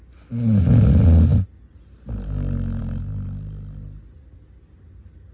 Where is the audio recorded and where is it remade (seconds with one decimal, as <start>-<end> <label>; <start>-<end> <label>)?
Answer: 0.0-5.3 recorded